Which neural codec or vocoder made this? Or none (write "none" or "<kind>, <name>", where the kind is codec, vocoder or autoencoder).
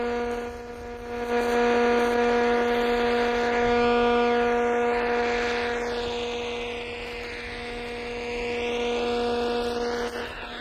none